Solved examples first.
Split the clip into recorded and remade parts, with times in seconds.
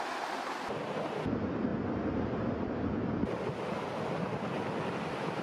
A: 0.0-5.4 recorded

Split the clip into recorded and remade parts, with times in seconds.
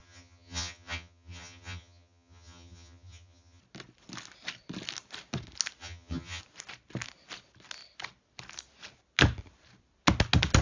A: 0.0-3.6 remade; 3.6-5.8 recorded; 5.8-6.4 remade; 6.4-10.6 recorded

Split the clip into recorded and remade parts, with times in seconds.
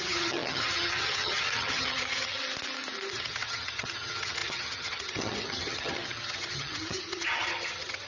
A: 0.0-2.4 remade; 2.4-3.1 recorded; 3.1-8.1 remade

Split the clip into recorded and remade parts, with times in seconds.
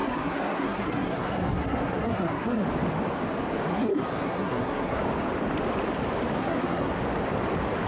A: 0.0-2.6 remade; 2.6-3.7 recorded; 3.7-5.0 remade; 5.0-6.4 recorded; 6.4-7.0 remade; 7.0-7.9 recorded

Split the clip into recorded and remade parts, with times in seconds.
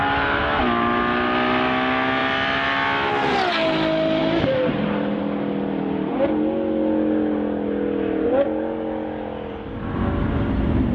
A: 0.0-0.6 remade; 0.6-4.2 recorded; 4.2-5.2 remade; 5.2-10.9 recorded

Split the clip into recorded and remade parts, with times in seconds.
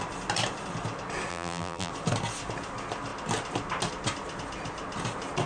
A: 0.0-1.3 recorded; 1.3-1.9 remade; 1.9-5.5 recorded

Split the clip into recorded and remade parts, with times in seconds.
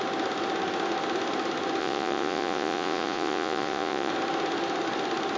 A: 0.0-1.8 recorded; 1.8-4.1 remade; 4.1-5.4 recorded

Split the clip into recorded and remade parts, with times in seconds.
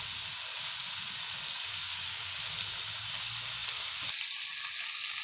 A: 0.0-1.7 recorded; 1.7-2.4 remade; 2.4-5.2 recorded